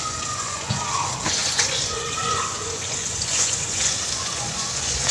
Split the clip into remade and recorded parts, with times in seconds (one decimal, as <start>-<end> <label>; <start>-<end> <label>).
0.0-5.1 remade